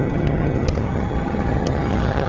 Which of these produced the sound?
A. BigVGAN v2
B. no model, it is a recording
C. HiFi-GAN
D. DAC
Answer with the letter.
C